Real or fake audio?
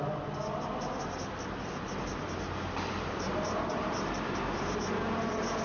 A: real